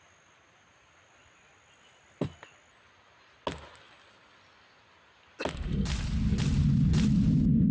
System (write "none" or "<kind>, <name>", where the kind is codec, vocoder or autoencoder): none